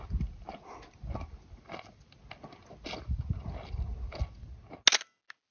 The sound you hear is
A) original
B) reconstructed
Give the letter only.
A